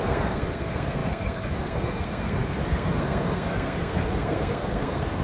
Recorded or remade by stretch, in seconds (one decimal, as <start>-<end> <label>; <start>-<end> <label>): 0.0-5.2 remade